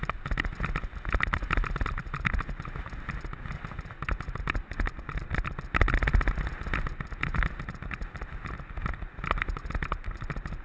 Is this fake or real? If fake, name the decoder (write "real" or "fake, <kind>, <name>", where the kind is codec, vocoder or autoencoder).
real